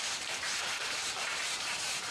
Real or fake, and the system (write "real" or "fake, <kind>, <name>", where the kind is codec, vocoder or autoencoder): fake, vocoder, BigVGAN v2